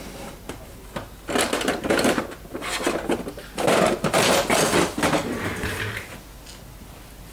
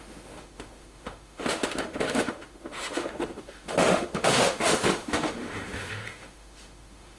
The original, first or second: first